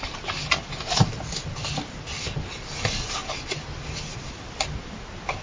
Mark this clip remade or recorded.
recorded